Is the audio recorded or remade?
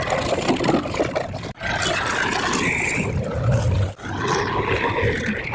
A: recorded